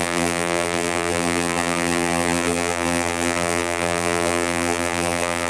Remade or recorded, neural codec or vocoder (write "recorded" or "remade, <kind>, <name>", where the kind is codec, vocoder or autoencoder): remade, vocoder, BigVGAN v2